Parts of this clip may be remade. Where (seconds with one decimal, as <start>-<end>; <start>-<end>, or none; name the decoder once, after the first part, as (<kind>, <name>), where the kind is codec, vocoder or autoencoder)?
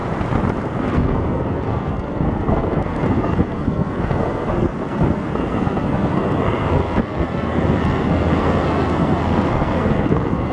0.9-10.5 (codec, SNAC)